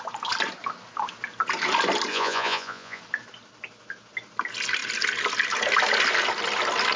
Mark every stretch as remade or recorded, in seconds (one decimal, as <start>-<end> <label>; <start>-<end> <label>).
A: 0.0-2.1 recorded; 2.1-3.0 remade; 3.0-7.0 recorded

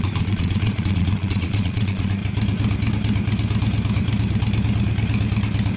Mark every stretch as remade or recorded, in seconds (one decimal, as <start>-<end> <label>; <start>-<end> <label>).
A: 0.0-2.2 remade; 2.2-5.8 recorded

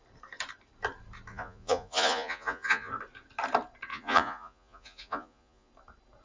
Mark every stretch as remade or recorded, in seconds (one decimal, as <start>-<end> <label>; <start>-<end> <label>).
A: 0.0-1.3 recorded; 1.3-2.9 remade; 2.9-3.9 recorded; 3.9-5.7 remade; 5.7-6.2 recorded

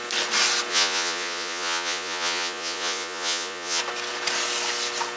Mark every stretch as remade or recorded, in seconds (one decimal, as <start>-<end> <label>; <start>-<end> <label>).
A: 0.0-0.7 recorded; 0.7-3.8 remade; 3.8-5.2 recorded

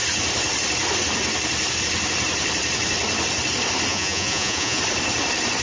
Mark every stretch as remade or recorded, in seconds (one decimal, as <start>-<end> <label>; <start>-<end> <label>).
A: 0.0-3.9 recorded; 3.9-4.8 remade; 4.8-5.6 recorded

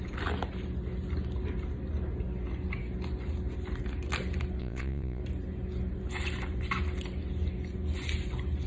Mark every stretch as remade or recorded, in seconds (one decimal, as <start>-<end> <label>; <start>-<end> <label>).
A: 0.0-4.6 recorded; 4.6-5.2 remade; 5.2-8.7 recorded

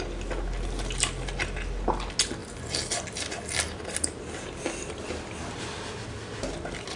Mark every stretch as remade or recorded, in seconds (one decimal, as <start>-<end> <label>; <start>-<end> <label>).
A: 0.0-7.0 recorded

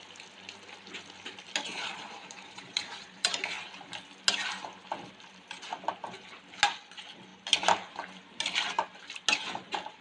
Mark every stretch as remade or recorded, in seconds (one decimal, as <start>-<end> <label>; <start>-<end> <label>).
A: 0.0-1.7 recorded; 1.7-3.5 remade; 3.5-10.0 recorded